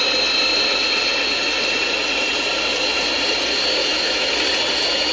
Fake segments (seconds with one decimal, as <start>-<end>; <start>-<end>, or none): 3.8-4.3

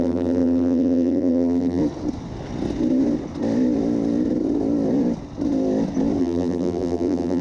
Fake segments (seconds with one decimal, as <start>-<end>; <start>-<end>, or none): 0.0-1.8; 6.2-7.4

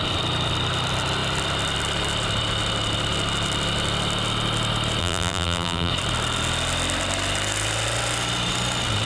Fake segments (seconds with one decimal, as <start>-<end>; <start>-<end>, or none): 5.0-5.9

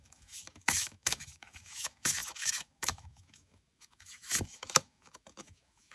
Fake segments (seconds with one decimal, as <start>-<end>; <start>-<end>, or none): 0.0-5.9

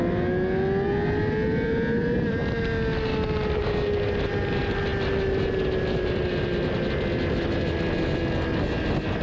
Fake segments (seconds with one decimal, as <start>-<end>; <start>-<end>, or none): none

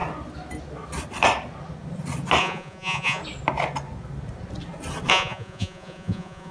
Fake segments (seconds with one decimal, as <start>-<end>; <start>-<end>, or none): 2.4-3.2; 5.1-6.5

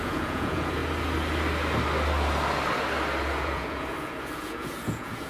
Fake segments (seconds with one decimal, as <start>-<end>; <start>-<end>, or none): 0.0-0.8; 3.2-5.3

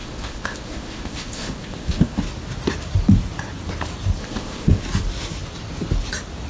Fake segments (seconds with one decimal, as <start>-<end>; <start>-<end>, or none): 0.0-2.2; 4.2-4.8